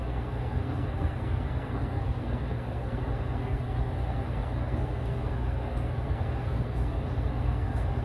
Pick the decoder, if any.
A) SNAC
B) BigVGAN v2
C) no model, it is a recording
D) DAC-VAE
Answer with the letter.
A